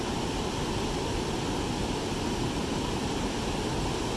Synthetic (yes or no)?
no